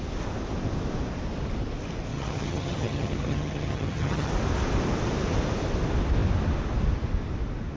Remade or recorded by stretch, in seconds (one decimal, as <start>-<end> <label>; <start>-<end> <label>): 0.0-2.1 recorded; 2.1-4.3 remade; 4.3-7.8 recorded